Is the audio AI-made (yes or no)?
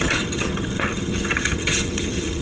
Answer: yes